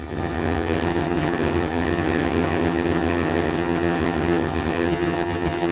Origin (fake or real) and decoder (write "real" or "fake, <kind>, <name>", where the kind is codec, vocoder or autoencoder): fake, vocoder, HiFi-GAN